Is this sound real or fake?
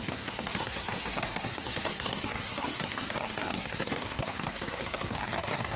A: fake